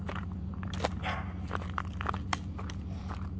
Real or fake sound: real